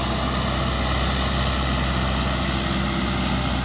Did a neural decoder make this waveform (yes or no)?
no